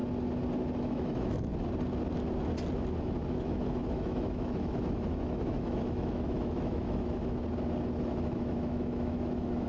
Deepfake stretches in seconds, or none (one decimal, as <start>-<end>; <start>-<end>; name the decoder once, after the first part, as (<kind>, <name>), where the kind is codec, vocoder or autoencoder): 0.8-1.5 (autoencoder, DAC-VAE); 3.4-7.2; 7.9-9.7